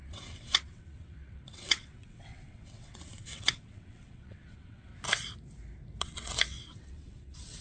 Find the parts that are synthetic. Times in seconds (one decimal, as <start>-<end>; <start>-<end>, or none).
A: 0.0-4.9; 6.0-7.6